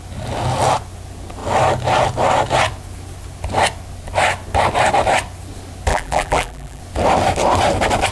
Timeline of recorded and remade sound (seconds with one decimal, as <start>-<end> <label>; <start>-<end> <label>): 0.0-5.9 recorded; 5.9-6.8 remade; 6.8-8.1 recorded